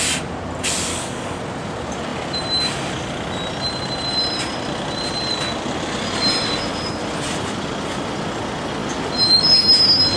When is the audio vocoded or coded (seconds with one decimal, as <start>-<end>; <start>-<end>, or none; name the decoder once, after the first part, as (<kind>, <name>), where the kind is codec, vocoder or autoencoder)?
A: 0.9-1.4 (codec, DAC)